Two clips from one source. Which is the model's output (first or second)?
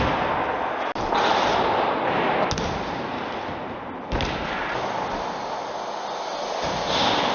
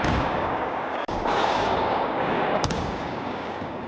second